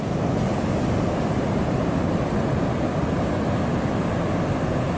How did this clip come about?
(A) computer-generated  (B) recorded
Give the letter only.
B